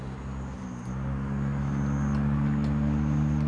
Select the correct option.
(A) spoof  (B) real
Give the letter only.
B